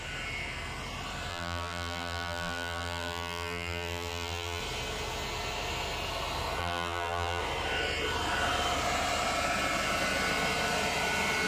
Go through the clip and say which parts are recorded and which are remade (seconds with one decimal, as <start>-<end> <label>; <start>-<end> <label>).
0.0-1.3 recorded; 1.3-4.6 remade; 4.6-6.6 recorded; 6.6-7.4 remade; 7.4-11.5 recorded